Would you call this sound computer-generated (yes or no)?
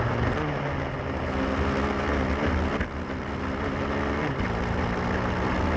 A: no